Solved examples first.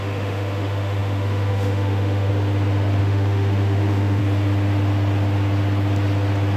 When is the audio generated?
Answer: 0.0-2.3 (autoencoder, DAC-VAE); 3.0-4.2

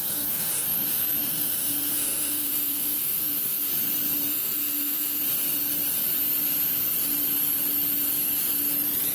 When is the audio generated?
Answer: 0.0-3.7 (autoencoder, DAC-VAE); 4.3-5.2

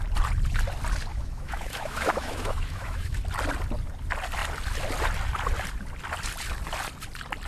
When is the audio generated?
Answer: 1.1-3.2 (autoencoder, DAC-VAE)

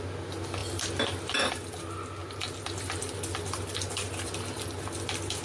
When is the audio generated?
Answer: none

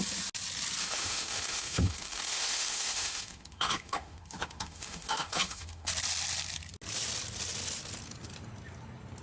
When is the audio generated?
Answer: 0.8-5.9 (autoencoder, DAC-VAE)